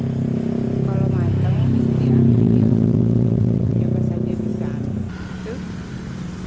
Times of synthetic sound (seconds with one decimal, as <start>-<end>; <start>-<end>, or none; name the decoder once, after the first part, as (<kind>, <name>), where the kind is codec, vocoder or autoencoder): 2.3-3.8 (vocoder, WaveNeXt)